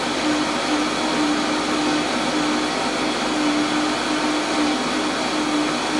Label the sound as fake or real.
real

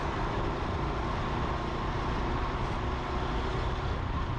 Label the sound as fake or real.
real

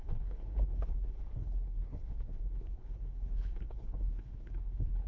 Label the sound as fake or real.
fake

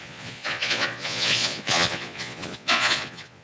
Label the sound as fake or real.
fake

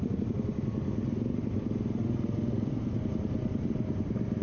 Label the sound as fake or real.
real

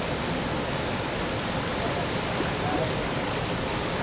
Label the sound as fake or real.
real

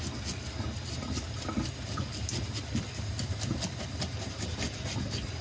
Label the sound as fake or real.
real